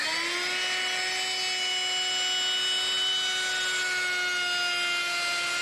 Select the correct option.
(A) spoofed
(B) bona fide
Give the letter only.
B